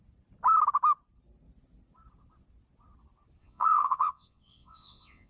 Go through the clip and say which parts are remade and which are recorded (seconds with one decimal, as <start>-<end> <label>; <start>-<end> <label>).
0.0-3.4 recorded; 3.4-5.3 remade